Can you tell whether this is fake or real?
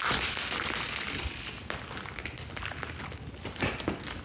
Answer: real